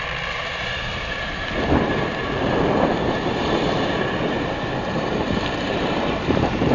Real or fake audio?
fake